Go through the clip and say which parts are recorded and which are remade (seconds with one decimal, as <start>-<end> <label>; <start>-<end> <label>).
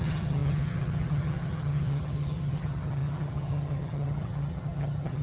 0.0-5.2 remade